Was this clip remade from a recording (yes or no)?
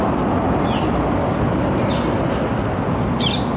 no